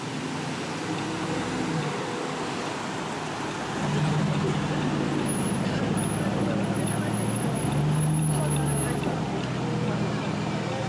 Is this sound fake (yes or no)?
no